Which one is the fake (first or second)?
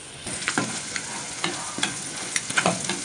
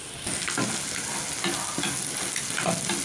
first